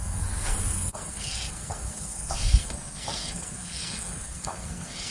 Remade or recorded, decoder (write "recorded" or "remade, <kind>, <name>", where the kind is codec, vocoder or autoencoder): remade, codec, SNAC